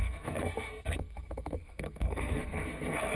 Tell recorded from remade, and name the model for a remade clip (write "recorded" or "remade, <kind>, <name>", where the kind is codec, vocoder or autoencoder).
remade, codec, SNAC